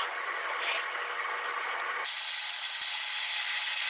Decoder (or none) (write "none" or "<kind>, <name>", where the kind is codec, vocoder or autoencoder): none